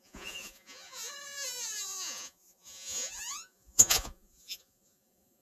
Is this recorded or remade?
remade